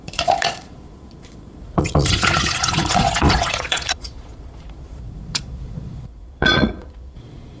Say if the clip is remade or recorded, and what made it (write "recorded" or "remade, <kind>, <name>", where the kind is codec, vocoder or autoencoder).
remade, vocoder, Vocos